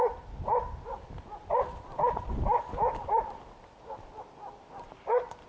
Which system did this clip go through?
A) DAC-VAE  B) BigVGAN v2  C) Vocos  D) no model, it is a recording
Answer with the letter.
D